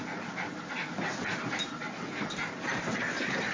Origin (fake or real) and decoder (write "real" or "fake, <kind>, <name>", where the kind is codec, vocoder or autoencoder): real